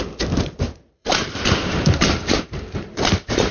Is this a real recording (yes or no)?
no